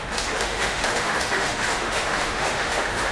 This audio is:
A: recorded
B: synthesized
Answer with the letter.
B